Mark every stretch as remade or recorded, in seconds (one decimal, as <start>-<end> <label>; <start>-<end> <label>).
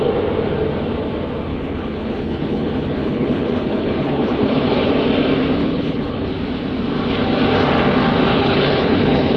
0.0-1.5 recorded; 1.5-4.9 remade; 4.9-5.6 recorded; 5.6-6.3 remade; 6.3-8.3 recorded; 8.3-9.4 remade